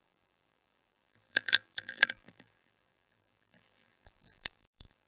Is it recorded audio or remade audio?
remade